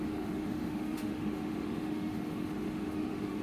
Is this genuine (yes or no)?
no